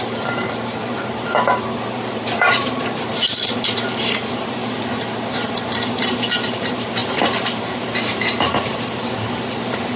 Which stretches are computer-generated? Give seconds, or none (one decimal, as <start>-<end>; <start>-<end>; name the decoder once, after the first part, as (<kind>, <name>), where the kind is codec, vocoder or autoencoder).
0.0-4.6 (vocoder, BigVGAN v2); 5.3-10.0